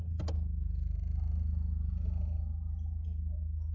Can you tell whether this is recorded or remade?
recorded